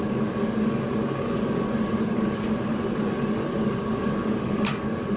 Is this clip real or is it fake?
fake